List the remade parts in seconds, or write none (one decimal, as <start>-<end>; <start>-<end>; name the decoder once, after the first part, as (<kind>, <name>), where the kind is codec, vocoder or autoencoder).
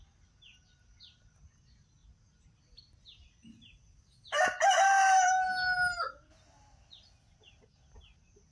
none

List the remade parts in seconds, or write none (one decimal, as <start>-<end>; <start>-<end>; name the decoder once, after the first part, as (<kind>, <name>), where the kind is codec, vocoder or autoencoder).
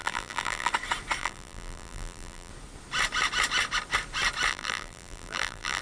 0.0-0.7 (vocoder, BigVGAN v2); 1.2-2.5; 4.5-5.8